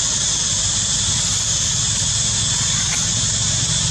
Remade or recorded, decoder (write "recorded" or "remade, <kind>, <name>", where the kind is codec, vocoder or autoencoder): recorded